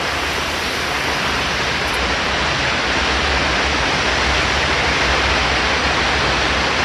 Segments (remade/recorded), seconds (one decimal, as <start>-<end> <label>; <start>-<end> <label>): 0.0-6.8 recorded